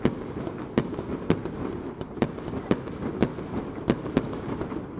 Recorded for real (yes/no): yes